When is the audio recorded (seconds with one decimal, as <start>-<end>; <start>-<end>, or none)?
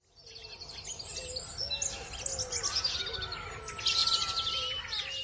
0.0-5.2